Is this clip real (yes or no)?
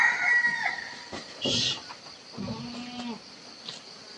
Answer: yes